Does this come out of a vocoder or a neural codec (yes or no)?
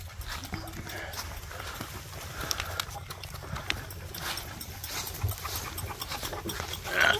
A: no